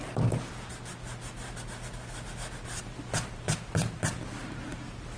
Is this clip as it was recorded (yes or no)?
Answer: yes